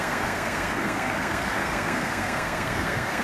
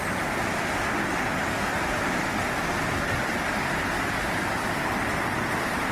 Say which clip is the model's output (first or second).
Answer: first